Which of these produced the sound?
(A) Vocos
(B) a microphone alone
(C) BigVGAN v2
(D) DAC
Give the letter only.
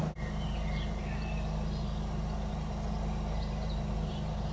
B